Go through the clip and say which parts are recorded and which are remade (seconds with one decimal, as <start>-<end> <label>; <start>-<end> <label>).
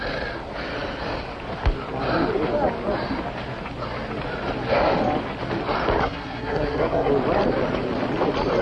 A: 0.0-6.0 recorded; 6.0-7.1 remade; 7.1-8.6 recorded